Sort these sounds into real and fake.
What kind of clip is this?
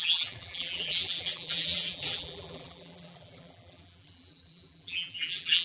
fake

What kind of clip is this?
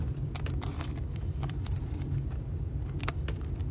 fake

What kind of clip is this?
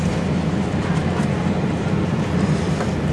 fake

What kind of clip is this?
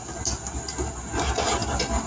real